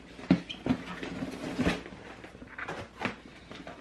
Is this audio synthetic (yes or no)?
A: no